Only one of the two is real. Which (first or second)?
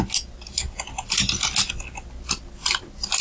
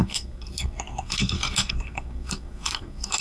first